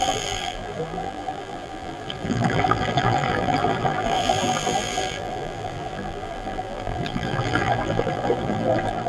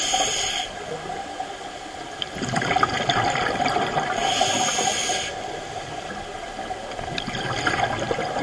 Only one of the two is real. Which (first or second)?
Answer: second